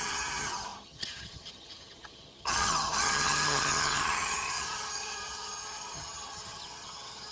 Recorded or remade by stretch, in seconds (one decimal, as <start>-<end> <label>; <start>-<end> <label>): 0.0-7.3 remade